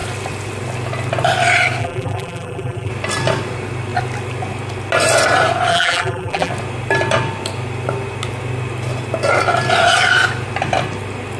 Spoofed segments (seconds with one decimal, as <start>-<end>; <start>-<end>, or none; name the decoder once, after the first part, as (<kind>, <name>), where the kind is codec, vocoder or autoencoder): 1.8-2.9 (vocoder, BigVGAN v2); 5.7-6.5